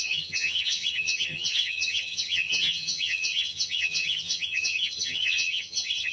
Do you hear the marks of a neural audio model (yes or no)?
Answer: yes